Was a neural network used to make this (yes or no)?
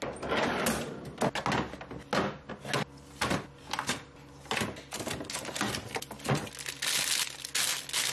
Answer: no